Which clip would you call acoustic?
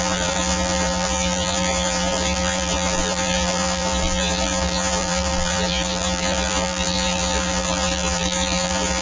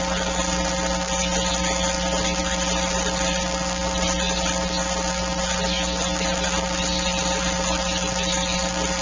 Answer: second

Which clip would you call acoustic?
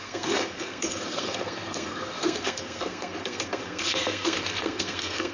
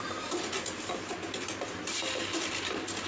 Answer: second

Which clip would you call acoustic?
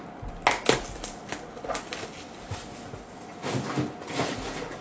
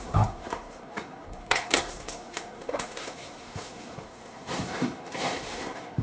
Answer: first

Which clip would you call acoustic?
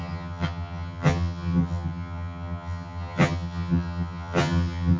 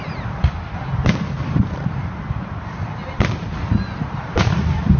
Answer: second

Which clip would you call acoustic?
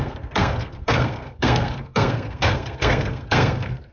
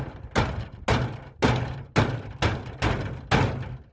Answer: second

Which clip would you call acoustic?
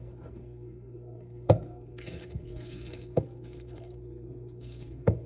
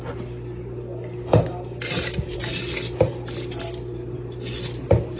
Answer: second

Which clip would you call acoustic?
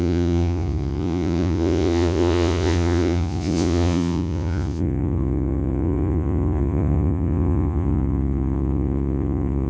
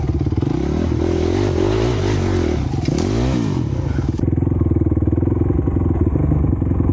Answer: second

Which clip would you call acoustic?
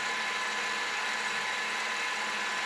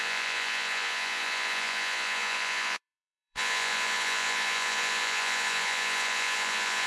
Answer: first